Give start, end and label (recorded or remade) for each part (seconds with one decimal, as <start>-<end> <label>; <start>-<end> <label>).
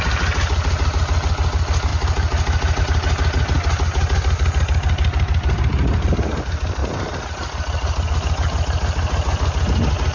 0.0-10.1 recorded